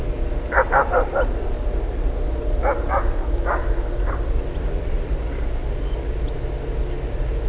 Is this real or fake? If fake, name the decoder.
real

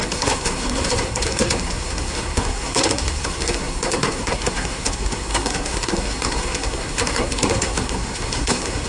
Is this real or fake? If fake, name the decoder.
fake, codec, SNAC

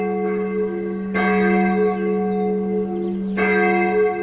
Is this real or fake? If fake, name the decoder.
real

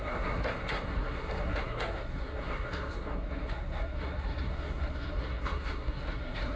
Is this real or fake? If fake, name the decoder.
fake, codec, SNAC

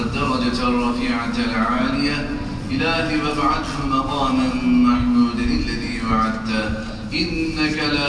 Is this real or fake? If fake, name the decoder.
real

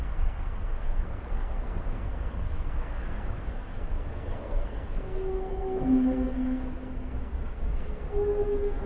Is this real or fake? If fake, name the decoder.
fake, codec, SNAC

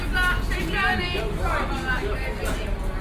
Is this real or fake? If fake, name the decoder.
real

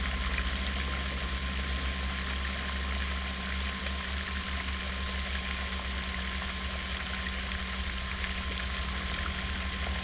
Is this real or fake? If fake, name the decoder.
real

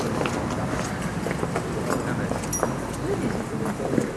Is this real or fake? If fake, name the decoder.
real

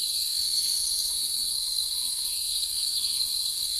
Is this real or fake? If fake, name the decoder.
fake, codec, SNAC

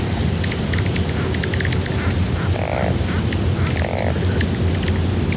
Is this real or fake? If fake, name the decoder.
real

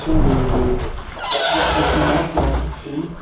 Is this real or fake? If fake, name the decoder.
real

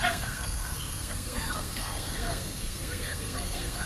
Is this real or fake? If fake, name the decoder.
fake, codec, SNAC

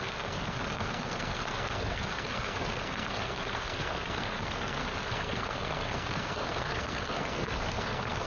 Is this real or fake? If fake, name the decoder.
fake, codec, SNAC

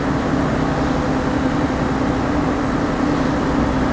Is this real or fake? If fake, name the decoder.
real